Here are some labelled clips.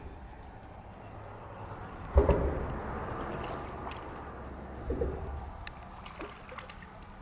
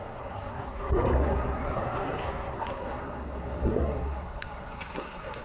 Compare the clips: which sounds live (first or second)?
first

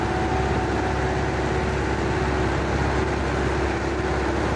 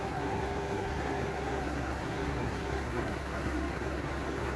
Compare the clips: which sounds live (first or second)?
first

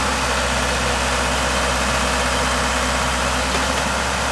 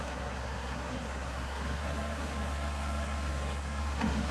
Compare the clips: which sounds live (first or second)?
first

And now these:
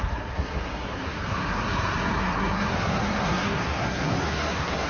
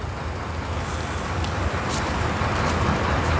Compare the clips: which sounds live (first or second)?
second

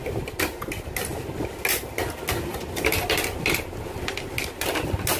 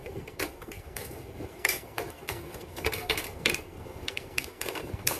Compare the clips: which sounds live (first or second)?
first